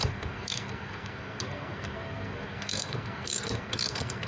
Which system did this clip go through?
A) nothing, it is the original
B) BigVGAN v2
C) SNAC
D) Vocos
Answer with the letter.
C